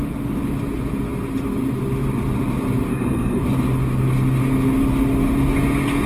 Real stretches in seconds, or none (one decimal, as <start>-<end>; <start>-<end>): 0.0-2.9; 3.4-6.1